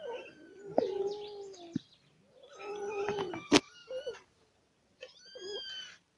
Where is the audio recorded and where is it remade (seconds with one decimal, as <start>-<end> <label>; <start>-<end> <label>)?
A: 0.0-6.2 recorded